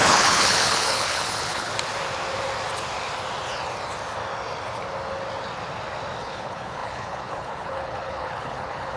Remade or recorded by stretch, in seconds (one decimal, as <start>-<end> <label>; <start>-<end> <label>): 0.0-1.7 remade; 1.7-6.2 recorded; 6.2-9.0 remade